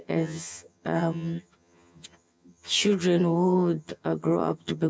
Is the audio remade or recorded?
remade